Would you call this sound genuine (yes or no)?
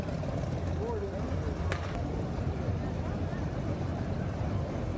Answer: yes